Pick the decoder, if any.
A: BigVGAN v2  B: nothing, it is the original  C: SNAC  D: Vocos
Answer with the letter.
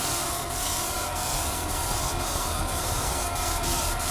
C